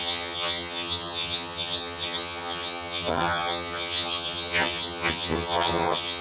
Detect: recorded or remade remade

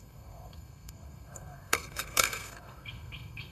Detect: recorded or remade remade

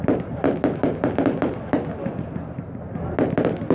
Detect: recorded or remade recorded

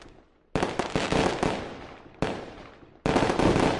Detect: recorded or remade recorded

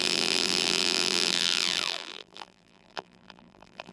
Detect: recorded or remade remade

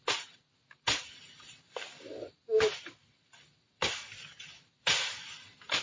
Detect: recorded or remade recorded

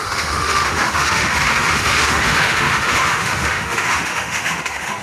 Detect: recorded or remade remade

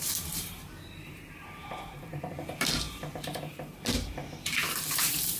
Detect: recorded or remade remade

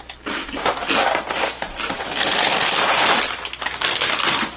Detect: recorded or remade recorded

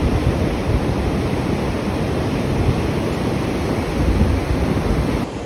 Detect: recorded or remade recorded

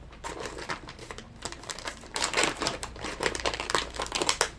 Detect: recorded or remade remade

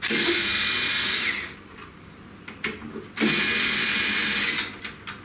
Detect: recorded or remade recorded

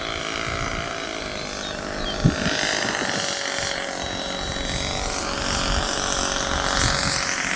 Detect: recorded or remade recorded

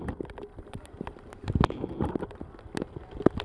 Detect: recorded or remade recorded